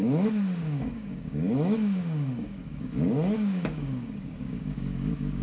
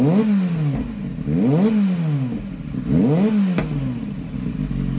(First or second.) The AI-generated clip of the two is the first